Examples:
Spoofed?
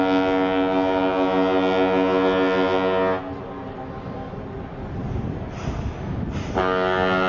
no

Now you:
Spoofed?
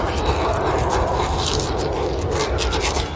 no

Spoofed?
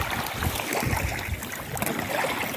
no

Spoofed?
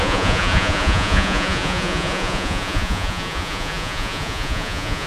yes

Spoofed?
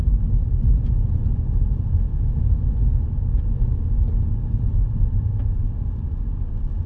no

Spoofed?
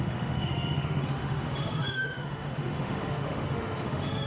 yes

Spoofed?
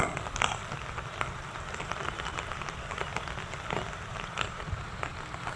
no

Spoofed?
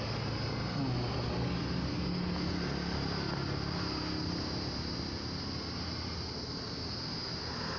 no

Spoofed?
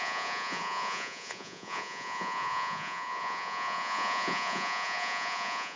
yes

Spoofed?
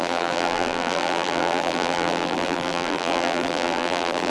yes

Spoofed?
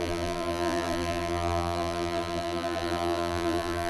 yes